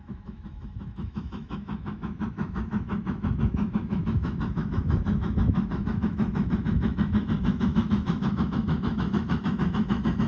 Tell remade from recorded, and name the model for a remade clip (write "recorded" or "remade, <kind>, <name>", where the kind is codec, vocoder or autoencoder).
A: remade, autoencoder, DAC-VAE